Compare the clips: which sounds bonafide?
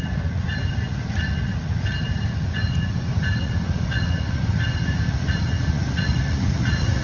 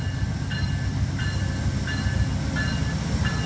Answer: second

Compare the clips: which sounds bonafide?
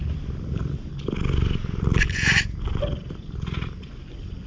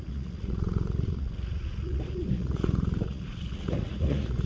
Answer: first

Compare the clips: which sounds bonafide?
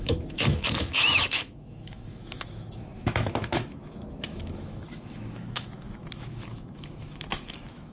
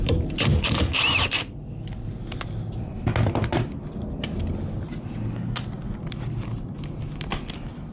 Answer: second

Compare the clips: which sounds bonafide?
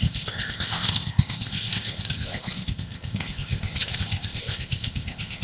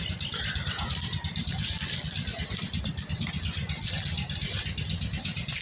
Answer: second